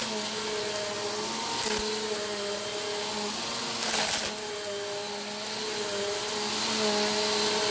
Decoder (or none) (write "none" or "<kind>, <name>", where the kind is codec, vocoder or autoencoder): none